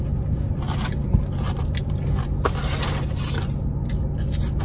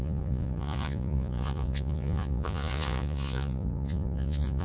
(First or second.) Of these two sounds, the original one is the first